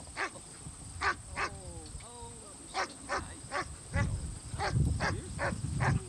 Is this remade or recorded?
recorded